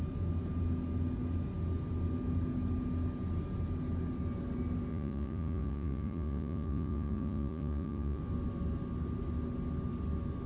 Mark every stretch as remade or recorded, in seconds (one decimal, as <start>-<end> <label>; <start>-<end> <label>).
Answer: 0.0-4.9 recorded; 4.9-8.2 remade; 8.2-10.5 recorded